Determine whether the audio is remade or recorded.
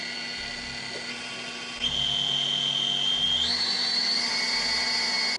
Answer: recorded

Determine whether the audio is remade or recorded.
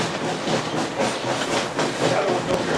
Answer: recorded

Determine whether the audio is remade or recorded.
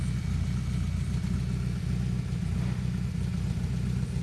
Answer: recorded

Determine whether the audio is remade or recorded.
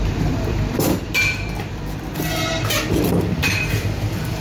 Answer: remade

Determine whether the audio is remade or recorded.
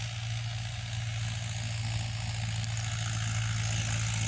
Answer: recorded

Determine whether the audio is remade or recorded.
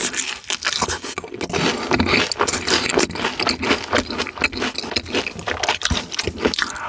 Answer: recorded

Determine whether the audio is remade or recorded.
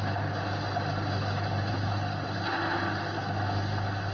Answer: recorded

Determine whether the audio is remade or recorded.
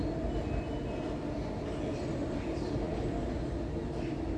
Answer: recorded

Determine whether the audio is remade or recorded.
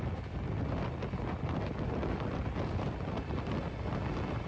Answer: recorded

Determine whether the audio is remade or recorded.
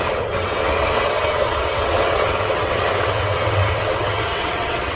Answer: remade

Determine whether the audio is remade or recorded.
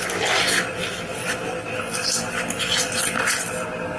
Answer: recorded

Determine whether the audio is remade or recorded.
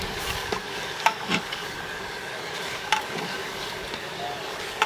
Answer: remade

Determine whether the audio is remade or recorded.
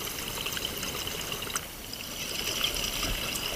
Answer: recorded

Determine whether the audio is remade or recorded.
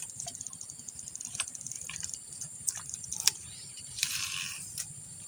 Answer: remade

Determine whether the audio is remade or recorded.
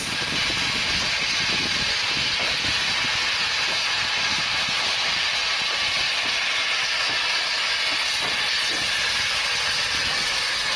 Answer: recorded